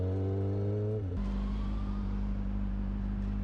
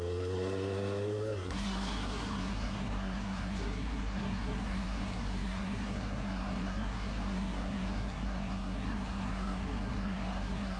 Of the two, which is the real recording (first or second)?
first